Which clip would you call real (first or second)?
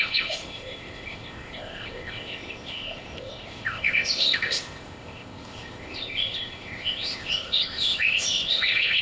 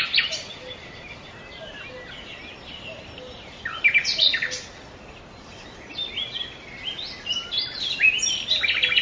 second